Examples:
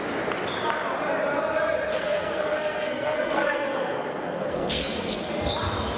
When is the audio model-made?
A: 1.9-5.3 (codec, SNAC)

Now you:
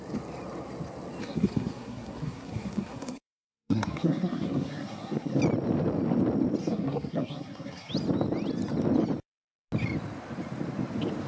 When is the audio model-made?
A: 1.2-5.4 (codec, SNAC); 6.6-7.9